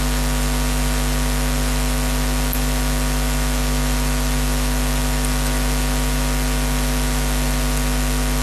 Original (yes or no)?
yes